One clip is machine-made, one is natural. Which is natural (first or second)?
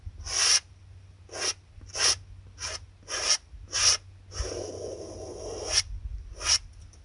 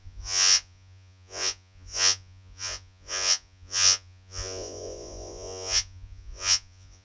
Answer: first